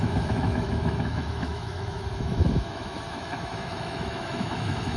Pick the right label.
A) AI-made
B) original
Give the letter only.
A